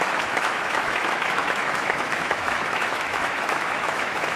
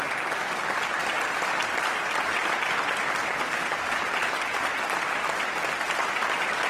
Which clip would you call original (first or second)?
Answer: second